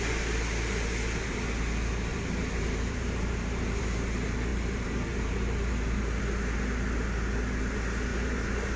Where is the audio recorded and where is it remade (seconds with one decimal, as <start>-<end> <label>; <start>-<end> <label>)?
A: 0.0-2.1 recorded; 2.1-3.8 remade; 3.8-4.5 recorded; 4.5-6.2 remade; 6.2-8.1 recorded; 8.1-8.8 remade